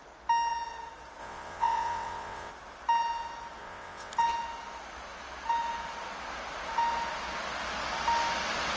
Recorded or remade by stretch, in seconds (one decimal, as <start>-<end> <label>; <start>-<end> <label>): 0.0-1.2 recorded; 1.2-2.5 remade; 2.5-3.6 recorded; 3.6-4.1 remade; 4.1-8.8 recorded